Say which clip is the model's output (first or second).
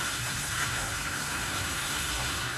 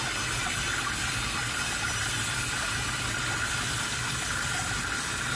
first